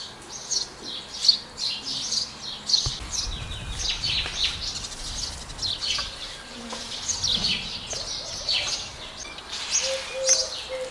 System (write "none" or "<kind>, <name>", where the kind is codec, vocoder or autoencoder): none